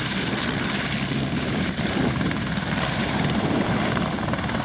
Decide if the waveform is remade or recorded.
remade